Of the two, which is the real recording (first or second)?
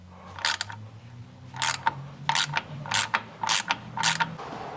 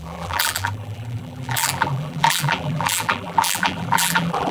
first